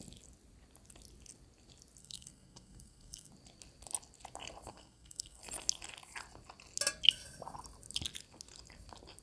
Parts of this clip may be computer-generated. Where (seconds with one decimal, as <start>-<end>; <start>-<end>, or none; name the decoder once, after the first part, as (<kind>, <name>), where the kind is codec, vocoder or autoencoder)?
2.0-3.3 (codec, SNAC); 4.7-5.4